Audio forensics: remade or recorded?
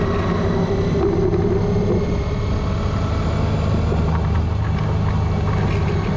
recorded